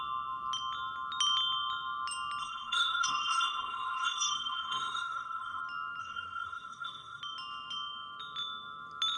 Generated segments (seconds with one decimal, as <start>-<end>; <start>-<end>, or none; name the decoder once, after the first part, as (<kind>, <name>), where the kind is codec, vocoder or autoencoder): 2.4-5.6 (codec, SNAC); 6.0-7.2